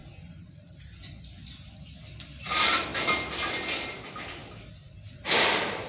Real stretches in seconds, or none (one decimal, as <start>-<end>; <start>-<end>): 0.0-5.9